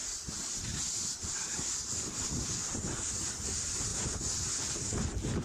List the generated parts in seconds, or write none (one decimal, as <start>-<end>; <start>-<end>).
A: 3.2-3.9; 4.6-5.4